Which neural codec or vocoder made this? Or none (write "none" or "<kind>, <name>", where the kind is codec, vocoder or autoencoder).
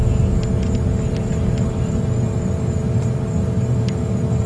none